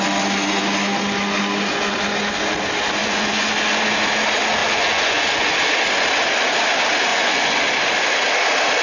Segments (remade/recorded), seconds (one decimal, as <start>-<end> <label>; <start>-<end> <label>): 0.0-3.0 recorded; 3.0-3.5 remade; 3.5-4.6 recorded; 4.6-5.5 remade; 5.5-7.1 recorded; 7.1-7.6 remade; 7.6-8.8 recorded